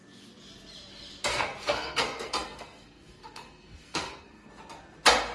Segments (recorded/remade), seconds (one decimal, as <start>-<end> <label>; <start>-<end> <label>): 0.0-1.3 recorded; 1.3-4.5 remade; 4.5-5.3 recorded